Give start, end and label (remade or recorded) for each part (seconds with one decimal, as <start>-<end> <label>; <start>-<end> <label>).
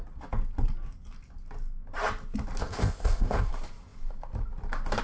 0.0-2.6 recorded; 2.6-3.5 remade; 3.5-5.0 recorded